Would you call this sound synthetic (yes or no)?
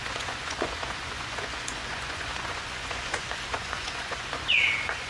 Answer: yes